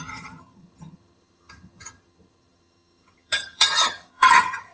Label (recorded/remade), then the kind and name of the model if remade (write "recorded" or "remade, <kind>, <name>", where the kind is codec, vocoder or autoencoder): remade, vocoder, HiFi-GAN